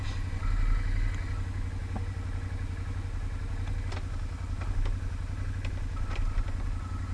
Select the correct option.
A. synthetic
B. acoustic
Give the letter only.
B